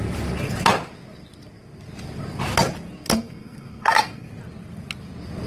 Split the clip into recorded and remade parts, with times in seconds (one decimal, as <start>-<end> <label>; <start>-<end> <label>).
0.0-3.1 recorded; 3.1-4.3 remade; 4.3-5.5 recorded